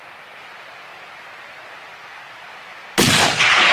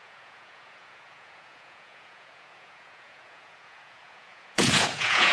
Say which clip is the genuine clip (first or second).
first